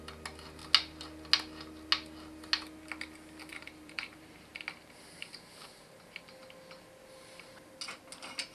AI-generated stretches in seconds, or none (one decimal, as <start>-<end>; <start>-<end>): 3.5-4.5